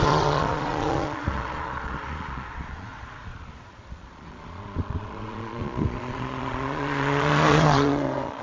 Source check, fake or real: fake